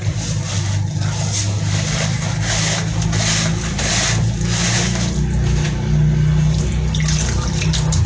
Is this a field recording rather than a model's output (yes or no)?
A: yes